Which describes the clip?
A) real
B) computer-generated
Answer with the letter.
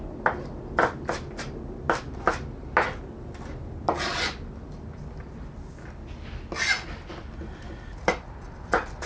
A